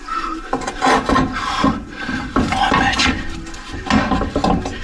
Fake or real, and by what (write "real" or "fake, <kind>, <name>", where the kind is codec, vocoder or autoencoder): real